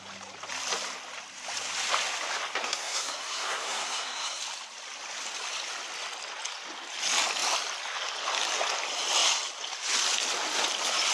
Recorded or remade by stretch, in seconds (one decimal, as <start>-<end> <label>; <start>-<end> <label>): 0.0-2.6 recorded; 2.6-4.4 remade; 4.4-11.1 recorded